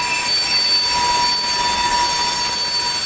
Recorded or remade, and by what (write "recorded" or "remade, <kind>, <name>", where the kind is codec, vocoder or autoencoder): recorded